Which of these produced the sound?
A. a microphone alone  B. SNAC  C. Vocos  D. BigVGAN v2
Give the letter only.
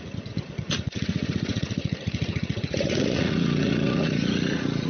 C